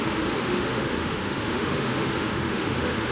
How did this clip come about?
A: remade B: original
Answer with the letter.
A